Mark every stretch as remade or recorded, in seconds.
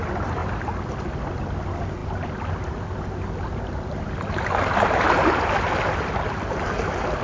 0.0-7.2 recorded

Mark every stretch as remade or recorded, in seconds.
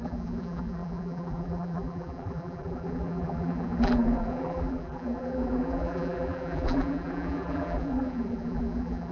0.0-9.1 remade